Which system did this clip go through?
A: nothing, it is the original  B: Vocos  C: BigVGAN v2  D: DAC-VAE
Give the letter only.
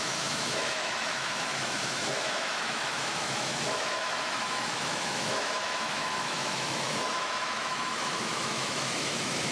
D